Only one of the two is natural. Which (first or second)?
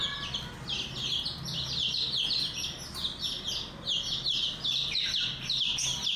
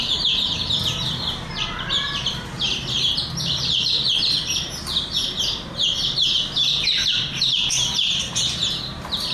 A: first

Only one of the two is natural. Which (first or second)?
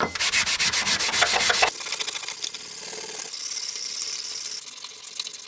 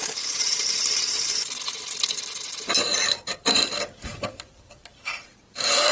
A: first